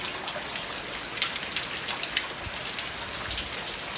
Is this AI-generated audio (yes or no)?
no